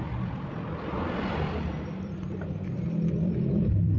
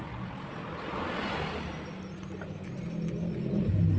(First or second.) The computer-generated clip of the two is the first